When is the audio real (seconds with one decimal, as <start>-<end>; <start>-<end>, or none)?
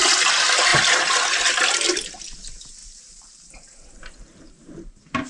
0.0-2.8